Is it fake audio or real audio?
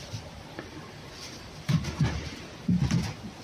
fake